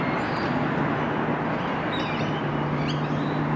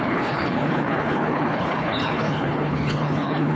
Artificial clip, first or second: second